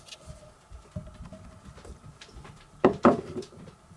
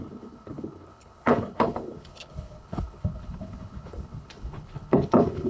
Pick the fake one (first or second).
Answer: second